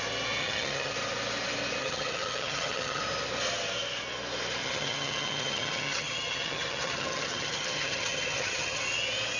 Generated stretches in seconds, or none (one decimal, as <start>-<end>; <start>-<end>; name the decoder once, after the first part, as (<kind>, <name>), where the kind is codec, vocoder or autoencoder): 0.4-0.9 (vocoder, HiFi-GAN); 1.8-3.0; 4.6-8.8